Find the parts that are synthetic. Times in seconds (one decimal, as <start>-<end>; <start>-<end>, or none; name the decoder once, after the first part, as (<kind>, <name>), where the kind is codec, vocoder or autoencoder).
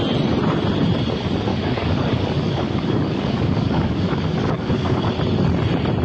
1.5-5.1 (codec, DAC)